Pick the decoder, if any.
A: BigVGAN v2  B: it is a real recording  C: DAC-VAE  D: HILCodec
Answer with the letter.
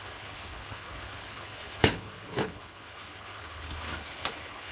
D